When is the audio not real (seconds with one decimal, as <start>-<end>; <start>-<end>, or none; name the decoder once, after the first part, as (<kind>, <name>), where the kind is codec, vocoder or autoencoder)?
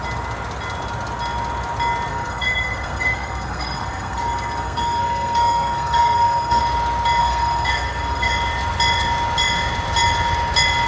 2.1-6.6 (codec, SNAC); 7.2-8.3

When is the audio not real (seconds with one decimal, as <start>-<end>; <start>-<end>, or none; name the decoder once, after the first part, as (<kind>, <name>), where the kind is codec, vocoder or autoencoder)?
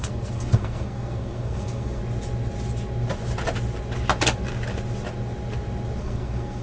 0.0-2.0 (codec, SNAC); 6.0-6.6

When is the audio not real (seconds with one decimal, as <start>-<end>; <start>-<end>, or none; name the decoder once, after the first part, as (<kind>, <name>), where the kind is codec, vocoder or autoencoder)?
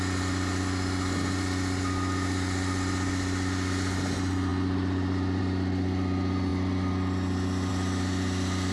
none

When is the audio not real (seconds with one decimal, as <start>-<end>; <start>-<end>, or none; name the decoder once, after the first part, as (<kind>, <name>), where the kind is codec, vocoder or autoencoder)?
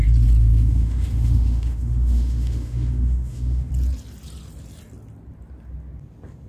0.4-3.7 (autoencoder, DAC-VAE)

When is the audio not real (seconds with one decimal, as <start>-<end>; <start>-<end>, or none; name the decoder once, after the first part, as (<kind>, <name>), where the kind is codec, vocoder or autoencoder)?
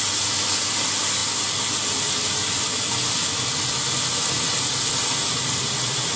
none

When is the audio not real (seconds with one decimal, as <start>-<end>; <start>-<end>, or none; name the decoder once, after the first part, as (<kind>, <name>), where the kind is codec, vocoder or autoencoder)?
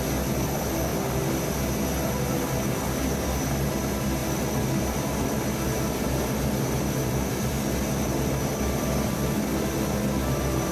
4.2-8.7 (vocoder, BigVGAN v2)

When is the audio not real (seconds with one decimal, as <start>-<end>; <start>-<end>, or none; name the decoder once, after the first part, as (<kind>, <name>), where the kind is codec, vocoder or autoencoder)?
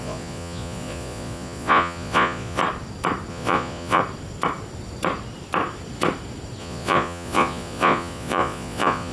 0.0-2.6 (vocoder, Vocos); 3.3-4.0; 6.6-9.1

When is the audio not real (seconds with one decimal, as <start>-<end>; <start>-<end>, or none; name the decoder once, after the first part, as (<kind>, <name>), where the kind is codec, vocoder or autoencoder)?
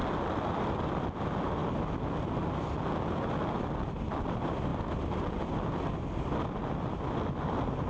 none